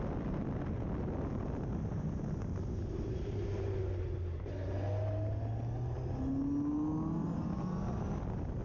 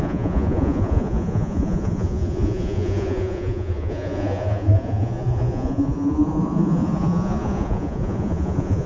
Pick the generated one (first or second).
second